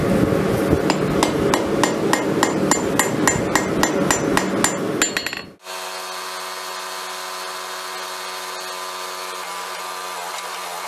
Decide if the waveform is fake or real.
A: real